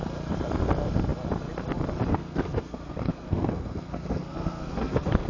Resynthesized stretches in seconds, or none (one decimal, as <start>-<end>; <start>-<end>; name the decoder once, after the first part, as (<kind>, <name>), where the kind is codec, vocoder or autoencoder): 2.1-5.3 (codec, SNAC)